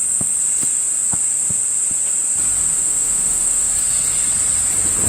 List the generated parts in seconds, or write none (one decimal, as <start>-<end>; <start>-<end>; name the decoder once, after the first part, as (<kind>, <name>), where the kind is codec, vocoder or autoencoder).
2.7-3.7 (autoencoder, DAC-VAE)